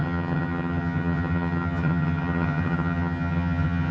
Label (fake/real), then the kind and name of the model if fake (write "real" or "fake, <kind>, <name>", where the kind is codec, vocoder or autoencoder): fake, vocoder, HiFi-GAN